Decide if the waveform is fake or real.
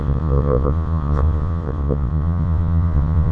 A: fake